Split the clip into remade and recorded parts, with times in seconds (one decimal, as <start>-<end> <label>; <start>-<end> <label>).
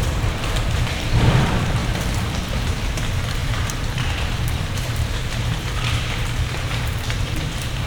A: 0.0-1.8 remade; 1.8-2.7 recorded; 2.7-7.9 remade